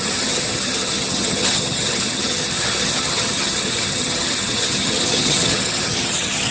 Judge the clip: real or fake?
fake